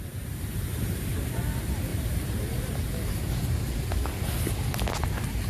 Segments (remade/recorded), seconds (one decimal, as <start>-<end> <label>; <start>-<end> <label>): 0.0-1.1 remade; 1.1-1.9 recorded; 1.9-3.5 remade; 3.5-5.5 recorded